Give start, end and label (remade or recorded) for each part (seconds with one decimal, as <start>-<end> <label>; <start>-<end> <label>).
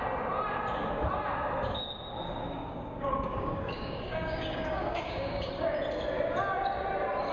0.0-2.4 recorded; 2.4-5.5 remade; 5.5-7.3 recorded